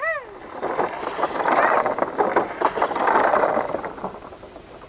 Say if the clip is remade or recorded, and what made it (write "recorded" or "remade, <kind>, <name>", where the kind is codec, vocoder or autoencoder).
recorded